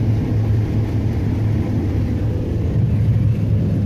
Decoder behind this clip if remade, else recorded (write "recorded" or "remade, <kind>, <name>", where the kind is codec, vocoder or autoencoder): recorded